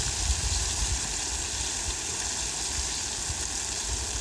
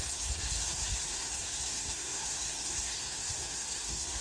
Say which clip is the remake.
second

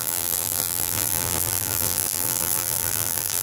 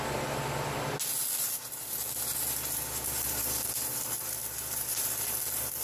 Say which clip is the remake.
first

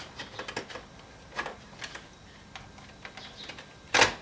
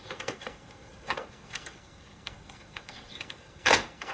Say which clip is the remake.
second